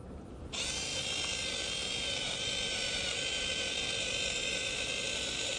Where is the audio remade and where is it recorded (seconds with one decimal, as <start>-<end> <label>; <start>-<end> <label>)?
0.0-5.6 recorded